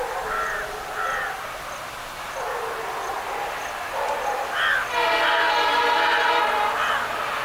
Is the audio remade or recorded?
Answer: recorded